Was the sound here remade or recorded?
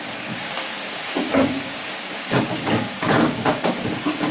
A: remade